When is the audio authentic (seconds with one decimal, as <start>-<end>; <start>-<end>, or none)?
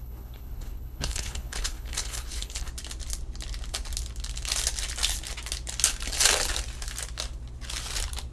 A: 2.7-8.3